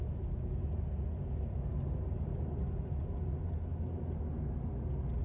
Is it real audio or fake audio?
real